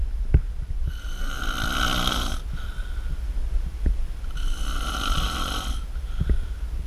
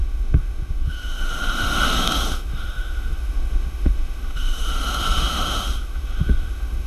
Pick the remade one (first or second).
second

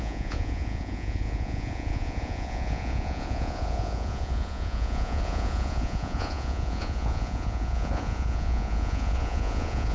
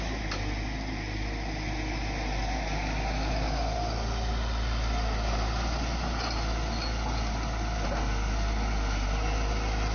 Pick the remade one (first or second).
first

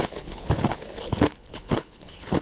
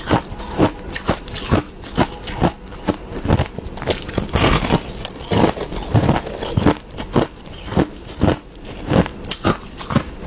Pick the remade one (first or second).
first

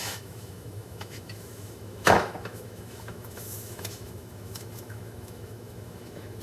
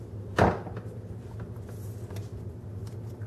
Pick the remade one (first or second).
first